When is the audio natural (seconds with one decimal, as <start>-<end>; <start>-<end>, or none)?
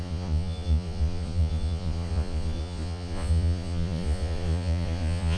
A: none